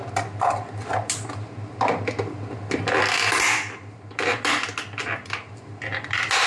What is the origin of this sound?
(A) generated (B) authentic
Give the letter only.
B